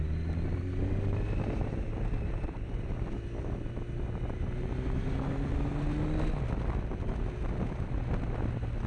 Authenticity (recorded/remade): recorded